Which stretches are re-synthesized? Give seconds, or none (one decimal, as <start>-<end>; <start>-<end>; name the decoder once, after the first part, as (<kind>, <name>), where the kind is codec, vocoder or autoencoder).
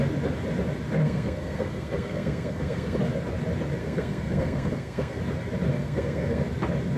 1.0-3.0 (codec, SNAC); 3.8-5.2; 5.7-6.4